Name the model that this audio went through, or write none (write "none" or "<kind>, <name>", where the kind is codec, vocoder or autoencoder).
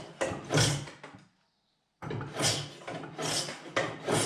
none